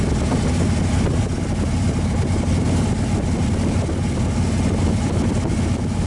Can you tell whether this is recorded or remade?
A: recorded